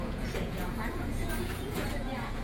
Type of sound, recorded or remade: remade